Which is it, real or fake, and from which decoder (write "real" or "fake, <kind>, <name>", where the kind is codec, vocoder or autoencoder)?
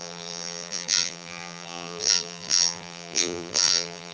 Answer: fake, vocoder, BigVGAN v2